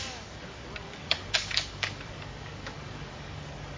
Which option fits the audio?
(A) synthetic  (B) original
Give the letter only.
A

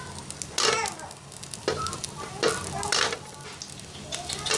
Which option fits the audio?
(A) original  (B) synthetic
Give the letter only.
A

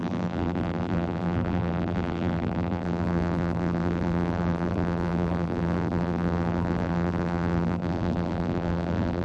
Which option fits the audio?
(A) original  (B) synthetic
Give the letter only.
B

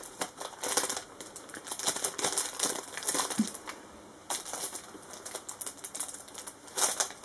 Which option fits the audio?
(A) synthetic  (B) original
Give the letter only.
B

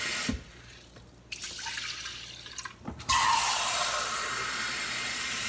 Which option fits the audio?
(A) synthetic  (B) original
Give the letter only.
B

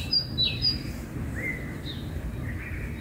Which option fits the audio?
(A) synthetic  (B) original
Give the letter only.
A